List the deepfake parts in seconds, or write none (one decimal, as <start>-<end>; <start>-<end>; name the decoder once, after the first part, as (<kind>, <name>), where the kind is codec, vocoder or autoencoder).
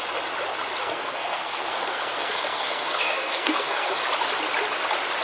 0.8-3.9 (codec, SNAC)